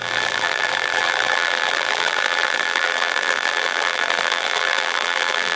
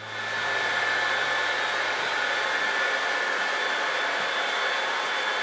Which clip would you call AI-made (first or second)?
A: first